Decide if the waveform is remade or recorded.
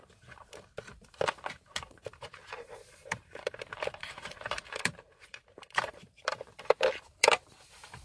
remade